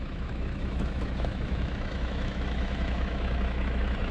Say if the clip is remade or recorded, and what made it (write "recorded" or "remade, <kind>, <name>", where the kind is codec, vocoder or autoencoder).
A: remade, autoencoder, DAC-VAE